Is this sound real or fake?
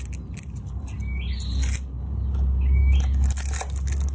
real